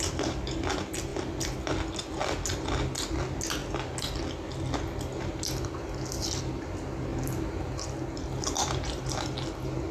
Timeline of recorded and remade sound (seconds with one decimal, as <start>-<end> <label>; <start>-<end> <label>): 0.0-7.1 recorded; 7.1-7.7 remade; 7.7-9.9 recorded